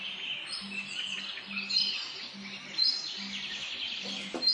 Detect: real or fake real